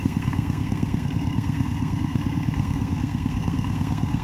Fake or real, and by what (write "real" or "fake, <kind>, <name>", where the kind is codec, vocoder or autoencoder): fake, codec, SNAC